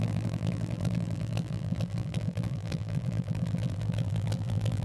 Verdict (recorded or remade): remade